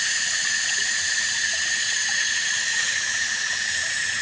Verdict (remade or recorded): remade